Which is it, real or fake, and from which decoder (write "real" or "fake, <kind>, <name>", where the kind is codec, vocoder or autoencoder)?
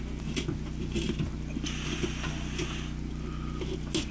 real